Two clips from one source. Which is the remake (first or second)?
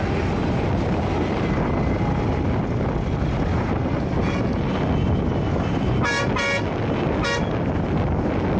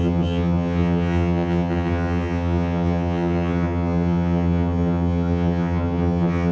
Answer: second